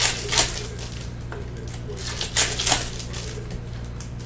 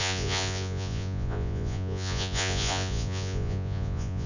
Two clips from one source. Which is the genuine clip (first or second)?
first